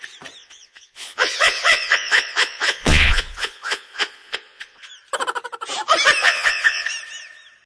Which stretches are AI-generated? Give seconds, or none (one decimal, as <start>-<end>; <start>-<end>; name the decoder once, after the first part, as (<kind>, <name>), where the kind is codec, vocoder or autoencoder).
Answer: 0.4-4.9 (vocoder, Vocos); 6.2-6.9